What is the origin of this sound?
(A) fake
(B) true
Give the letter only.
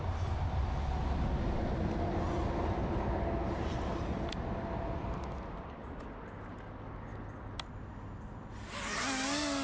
B